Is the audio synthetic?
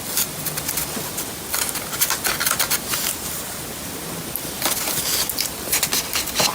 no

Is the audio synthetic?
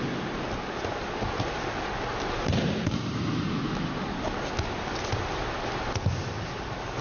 no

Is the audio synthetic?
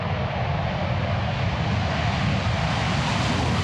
no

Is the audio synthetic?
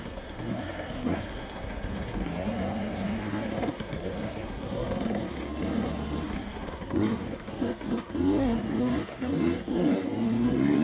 yes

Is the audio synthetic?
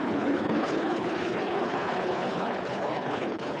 yes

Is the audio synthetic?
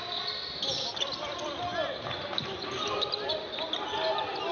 no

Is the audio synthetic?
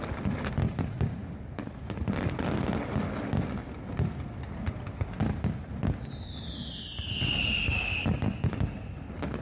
no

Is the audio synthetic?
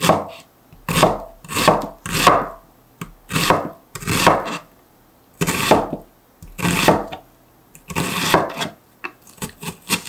no